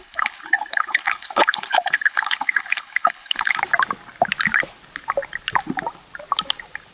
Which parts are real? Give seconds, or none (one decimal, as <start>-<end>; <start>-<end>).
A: 3.6-6.9